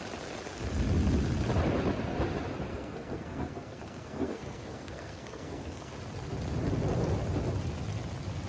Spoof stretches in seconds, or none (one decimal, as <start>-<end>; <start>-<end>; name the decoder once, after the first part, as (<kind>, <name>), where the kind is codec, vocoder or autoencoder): 2.7-5.9 (codec, SNAC)